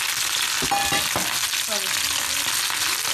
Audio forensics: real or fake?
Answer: real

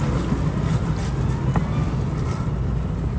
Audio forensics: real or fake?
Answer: real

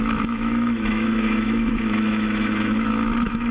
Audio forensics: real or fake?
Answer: fake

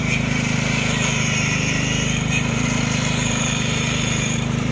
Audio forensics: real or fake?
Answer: fake